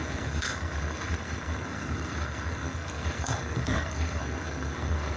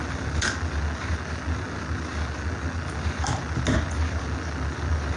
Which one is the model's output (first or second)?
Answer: first